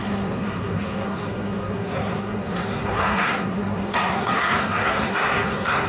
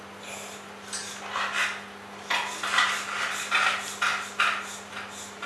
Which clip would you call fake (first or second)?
first